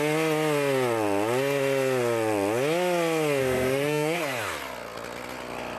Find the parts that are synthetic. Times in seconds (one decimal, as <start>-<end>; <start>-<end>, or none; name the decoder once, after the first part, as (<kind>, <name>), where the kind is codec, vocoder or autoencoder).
3.4-4.2 (autoencoder, DAC-VAE)